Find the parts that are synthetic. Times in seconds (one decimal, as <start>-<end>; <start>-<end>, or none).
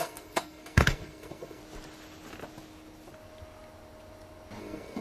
0.0-1.6; 4.6-5.0